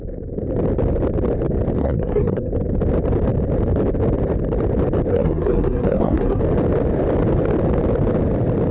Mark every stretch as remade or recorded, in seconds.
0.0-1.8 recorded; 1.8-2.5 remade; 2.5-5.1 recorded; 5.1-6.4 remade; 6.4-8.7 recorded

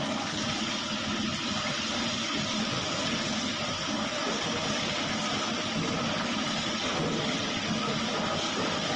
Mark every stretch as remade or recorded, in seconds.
0.0-9.0 recorded

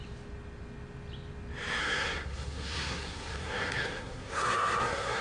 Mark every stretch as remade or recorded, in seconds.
0.0-1.8 recorded; 1.8-5.2 remade

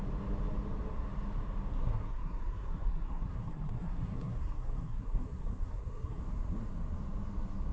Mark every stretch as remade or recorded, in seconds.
0.0-1.7 recorded; 1.7-6.2 remade; 6.2-7.7 recorded

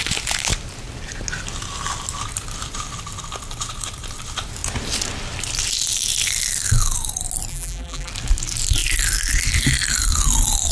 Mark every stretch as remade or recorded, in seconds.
0.0-7.5 recorded; 7.5-8.1 remade; 8.1-10.7 recorded

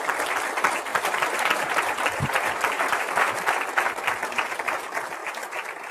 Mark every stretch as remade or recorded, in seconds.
0.0-0.9 recorded; 0.9-3.4 remade; 3.4-4.2 recorded; 4.2-4.8 remade; 4.8-5.2 recorded; 5.2-5.9 remade

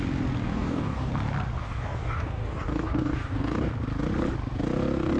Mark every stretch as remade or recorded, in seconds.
0.0-0.4 recorded; 0.4-1.1 remade; 1.1-1.6 recorded; 1.6-3.7 remade; 3.7-5.2 recorded